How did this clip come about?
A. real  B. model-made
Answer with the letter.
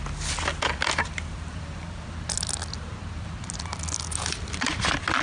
A